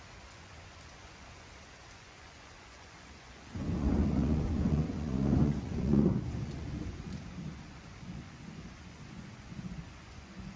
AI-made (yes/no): yes